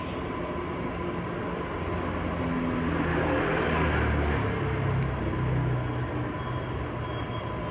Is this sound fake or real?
real